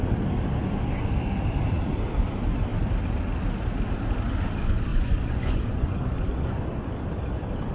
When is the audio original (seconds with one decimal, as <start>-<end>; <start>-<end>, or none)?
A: 0.0-4.9; 6.9-7.7